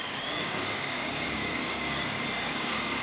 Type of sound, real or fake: fake